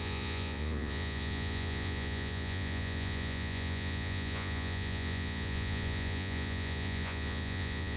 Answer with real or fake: fake